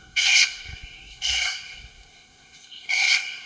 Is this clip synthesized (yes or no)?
yes